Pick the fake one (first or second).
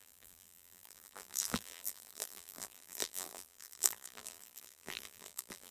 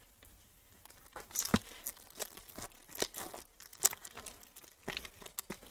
first